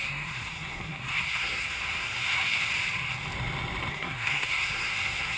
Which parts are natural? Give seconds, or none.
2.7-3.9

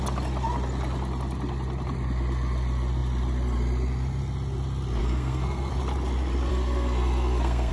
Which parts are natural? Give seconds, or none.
0.0-5.0; 5.7-6.5

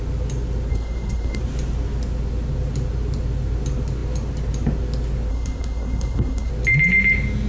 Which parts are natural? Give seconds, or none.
0.0-0.7; 1.4-5.3; 6.5-7.5

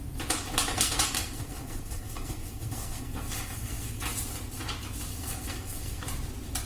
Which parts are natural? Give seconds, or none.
0.0-0.7; 4.0-5.1; 6.0-6.7